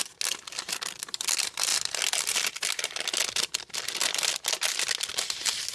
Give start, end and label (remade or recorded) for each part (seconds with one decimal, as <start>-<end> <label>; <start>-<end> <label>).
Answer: 0.0-5.7 recorded